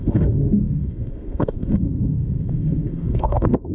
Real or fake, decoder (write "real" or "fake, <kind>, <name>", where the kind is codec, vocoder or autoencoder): fake, autoencoder, DAC-VAE